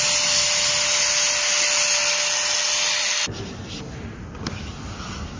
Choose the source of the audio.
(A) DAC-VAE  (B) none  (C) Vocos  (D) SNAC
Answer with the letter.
B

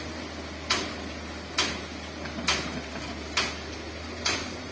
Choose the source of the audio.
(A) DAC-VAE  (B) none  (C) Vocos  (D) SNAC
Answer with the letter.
B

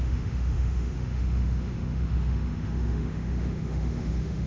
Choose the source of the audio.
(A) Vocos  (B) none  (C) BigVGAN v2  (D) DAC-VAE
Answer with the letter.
D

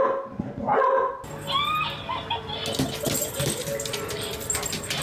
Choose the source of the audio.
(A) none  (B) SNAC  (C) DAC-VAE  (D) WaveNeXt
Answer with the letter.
A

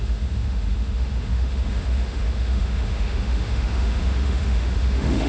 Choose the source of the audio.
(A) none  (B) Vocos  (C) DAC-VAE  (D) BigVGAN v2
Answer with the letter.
C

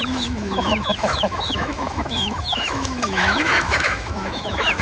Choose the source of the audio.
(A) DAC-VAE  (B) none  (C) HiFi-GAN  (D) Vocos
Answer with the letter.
A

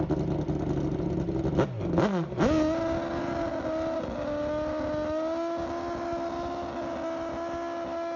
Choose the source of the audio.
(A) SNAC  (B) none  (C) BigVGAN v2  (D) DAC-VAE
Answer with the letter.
B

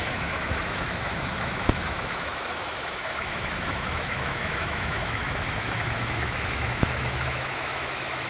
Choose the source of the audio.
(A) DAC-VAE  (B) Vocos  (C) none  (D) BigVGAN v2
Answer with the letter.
A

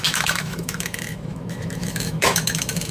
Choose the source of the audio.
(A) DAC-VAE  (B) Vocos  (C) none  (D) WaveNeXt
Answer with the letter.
A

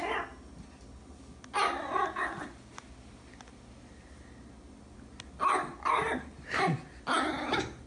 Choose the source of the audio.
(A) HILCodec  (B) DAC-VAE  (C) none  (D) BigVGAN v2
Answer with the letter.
C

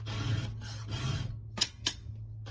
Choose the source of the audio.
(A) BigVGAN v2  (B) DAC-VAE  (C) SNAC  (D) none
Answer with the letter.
D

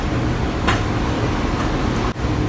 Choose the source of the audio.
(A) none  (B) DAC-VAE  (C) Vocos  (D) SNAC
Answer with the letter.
A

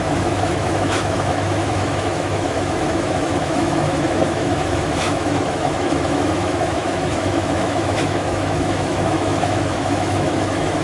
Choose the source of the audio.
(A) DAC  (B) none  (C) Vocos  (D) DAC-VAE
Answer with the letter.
D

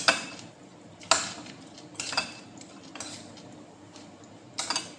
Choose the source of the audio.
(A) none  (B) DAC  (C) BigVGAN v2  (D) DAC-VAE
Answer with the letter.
A